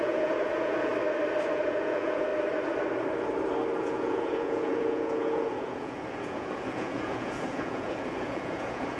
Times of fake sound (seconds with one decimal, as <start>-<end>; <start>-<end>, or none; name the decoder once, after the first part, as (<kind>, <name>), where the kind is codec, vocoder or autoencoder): 0.0-0.9 (vocoder, Vocos); 1.5-2.3; 3.8-9.0